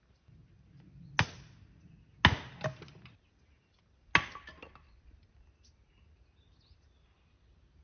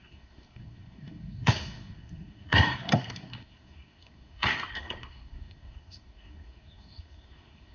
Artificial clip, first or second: second